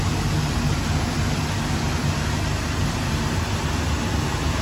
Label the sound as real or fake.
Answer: real